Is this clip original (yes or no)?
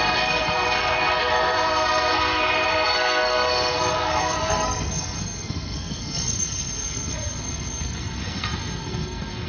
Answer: no